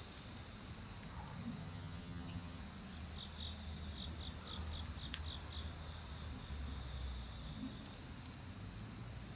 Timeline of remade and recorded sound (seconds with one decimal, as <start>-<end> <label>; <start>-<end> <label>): 0.0-1.6 recorded; 1.6-2.6 remade; 2.6-9.4 recorded